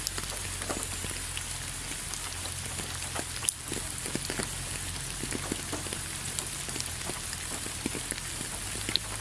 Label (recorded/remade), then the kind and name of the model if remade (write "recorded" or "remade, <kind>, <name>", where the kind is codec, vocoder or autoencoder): recorded